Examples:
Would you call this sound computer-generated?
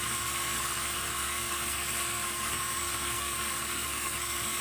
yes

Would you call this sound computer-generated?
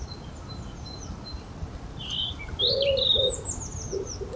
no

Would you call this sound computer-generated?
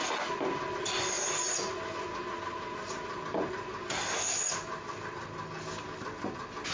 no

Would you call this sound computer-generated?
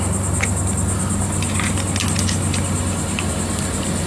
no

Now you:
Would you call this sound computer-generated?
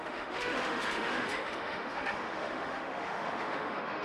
yes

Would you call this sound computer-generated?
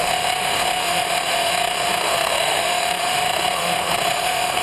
yes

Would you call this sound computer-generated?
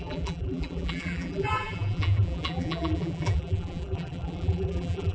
yes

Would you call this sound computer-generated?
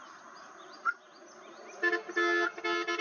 no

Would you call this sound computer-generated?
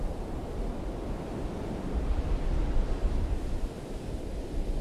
no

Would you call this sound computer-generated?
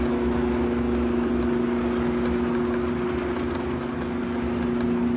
no